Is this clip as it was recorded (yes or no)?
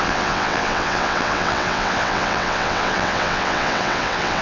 no